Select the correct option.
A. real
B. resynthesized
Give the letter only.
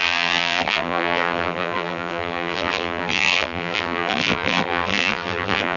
B